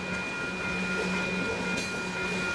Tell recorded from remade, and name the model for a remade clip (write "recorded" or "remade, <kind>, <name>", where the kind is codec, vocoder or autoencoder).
recorded